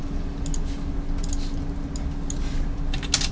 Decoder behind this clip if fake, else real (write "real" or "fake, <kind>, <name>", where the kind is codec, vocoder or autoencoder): real